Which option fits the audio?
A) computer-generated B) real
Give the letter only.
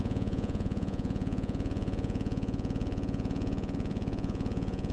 A